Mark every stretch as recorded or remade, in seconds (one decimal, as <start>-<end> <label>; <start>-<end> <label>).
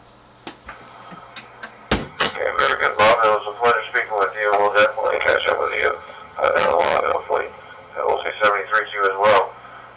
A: 0.0-2.0 recorded; 2.0-3.0 remade; 3.0-5.0 recorded; 5.0-8.3 remade; 8.3-10.0 recorded